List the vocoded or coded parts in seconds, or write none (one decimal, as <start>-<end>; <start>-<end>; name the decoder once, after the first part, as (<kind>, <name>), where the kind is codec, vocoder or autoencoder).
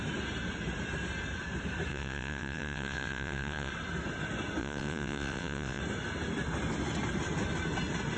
1.9-3.7 (vocoder, WaveNeXt); 4.6-5.8